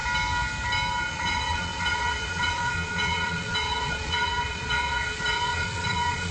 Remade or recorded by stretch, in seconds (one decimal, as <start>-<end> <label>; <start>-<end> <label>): 0.0-1.1 recorded; 1.1-6.3 remade